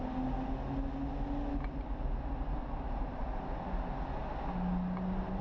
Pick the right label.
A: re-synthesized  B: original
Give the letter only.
B